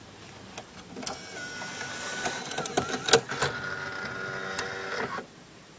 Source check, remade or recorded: recorded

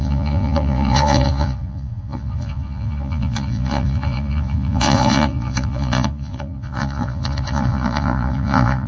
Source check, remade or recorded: remade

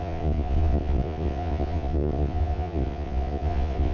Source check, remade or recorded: remade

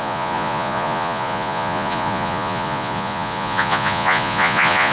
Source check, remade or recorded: remade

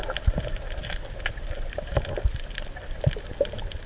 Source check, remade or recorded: recorded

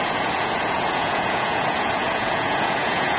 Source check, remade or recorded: remade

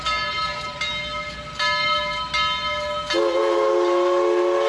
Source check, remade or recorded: recorded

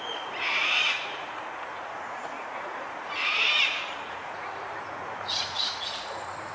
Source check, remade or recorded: remade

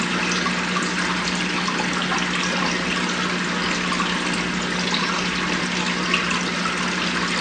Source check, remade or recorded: recorded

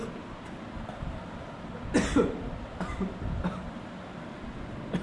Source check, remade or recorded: recorded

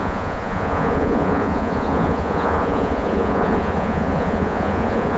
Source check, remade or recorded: remade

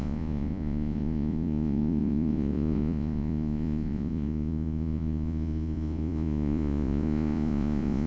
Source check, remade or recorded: remade